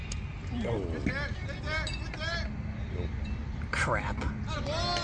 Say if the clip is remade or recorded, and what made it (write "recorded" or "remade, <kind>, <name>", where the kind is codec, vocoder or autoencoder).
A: recorded